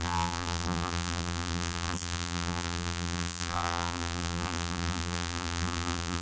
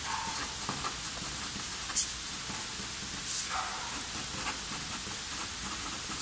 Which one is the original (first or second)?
second